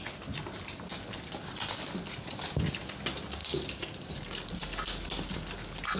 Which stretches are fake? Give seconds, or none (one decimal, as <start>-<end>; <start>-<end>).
none